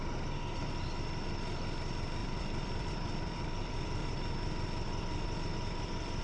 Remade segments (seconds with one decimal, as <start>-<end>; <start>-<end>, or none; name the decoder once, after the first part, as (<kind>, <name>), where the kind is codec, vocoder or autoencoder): 2.2-6.2 (vocoder, BigVGAN v2)